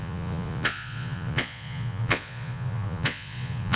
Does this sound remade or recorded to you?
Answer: remade